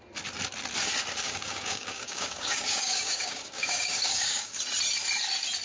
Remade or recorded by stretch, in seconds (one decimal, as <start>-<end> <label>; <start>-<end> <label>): 0.0-1.2 recorded; 1.2-4.6 remade; 4.6-5.6 recorded